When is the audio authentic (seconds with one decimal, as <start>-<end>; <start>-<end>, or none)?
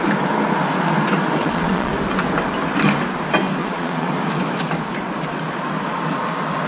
0.0-1.4; 1.9-3.6; 4.1-6.7